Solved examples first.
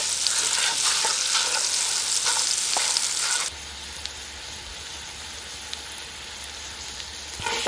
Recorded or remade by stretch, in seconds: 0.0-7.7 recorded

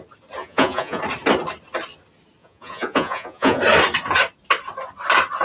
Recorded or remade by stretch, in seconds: 0.0-0.4 recorded; 0.4-1.0 remade; 1.0-2.4 recorded; 2.4-3.6 remade; 3.6-5.4 recorded

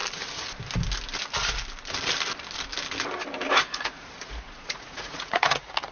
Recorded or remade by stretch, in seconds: 0.0-3.5 recorded; 3.5-5.9 remade

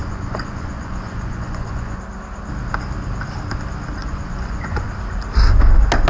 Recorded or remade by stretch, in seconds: 0.0-2.0 remade; 2.0-4.0 recorded; 4.0-4.9 remade; 4.9-6.1 recorded

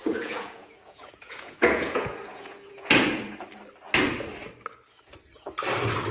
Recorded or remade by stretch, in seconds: 0.0-3.2 remade; 3.2-6.1 recorded